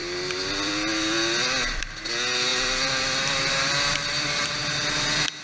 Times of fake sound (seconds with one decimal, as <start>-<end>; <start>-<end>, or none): none